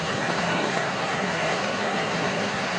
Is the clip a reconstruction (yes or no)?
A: yes